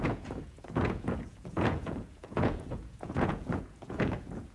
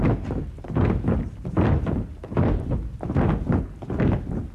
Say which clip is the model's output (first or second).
first